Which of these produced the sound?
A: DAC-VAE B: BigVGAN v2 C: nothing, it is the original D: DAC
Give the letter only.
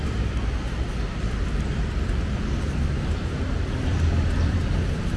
B